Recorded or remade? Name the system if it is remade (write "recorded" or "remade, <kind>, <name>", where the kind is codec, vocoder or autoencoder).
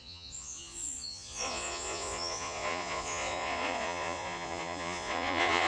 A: remade, vocoder, Vocos